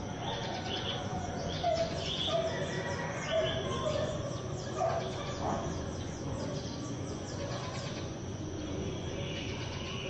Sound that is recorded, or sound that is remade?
remade